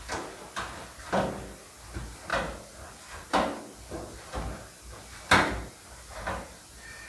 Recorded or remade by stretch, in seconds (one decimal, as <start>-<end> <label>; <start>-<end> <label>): 0.0-7.1 recorded